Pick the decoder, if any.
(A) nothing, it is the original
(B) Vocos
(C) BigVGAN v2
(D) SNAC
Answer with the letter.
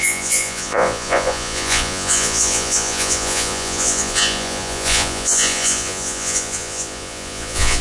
B